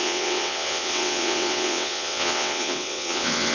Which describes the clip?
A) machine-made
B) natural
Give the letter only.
A